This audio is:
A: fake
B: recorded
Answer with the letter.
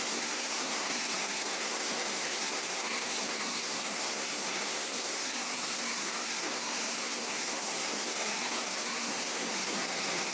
A